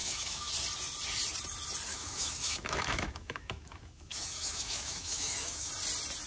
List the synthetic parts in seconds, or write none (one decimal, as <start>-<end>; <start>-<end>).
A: 0.0-0.5; 1.9-5.7